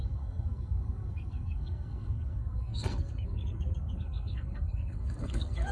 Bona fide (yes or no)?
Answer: no